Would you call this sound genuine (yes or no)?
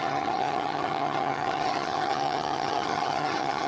no